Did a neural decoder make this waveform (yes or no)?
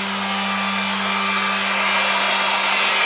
no